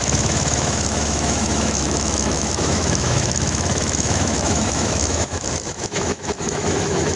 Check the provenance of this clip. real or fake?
fake